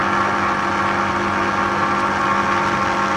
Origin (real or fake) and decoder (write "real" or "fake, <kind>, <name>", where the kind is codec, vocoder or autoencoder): real